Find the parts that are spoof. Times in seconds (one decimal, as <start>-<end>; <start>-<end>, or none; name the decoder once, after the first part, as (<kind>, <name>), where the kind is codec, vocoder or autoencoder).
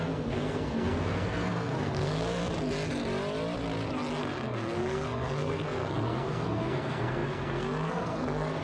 0.0-2.4 (codec, SNAC); 4.2-8.6